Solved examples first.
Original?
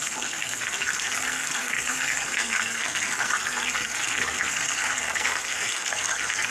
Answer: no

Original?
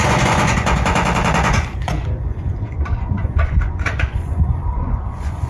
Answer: no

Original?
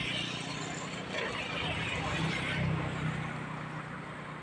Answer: yes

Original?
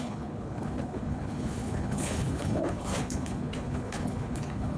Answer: no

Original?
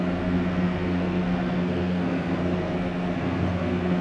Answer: no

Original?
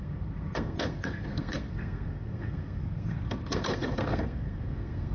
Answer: no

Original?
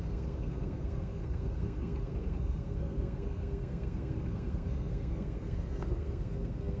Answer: no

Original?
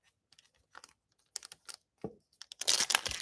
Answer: yes